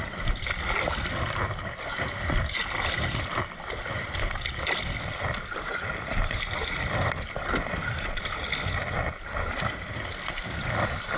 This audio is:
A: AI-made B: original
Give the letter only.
B